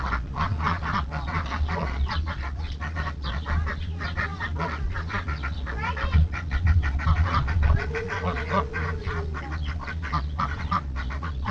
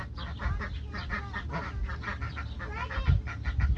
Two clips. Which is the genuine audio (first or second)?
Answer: second